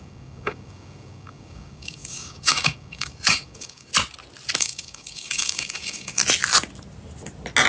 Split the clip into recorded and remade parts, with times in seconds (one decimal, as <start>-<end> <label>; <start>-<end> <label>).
0.0-3.9 remade; 3.9-4.6 recorded; 4.6-6.2 remade; 6.2-7.7 recorded